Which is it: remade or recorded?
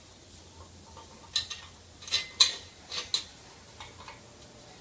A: recorded